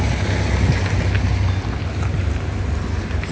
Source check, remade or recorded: recorded